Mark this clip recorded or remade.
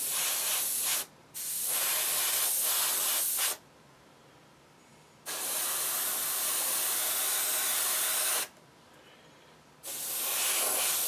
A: recorded